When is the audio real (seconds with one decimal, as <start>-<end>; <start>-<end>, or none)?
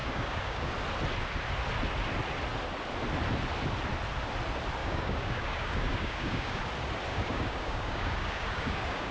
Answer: 0.7-4.8; 6.6-7.1